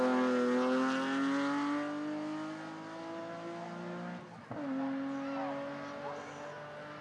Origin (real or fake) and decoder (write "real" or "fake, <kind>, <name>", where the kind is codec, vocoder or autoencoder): real